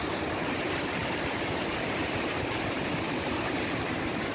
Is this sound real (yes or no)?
no